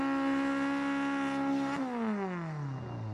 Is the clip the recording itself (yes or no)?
yes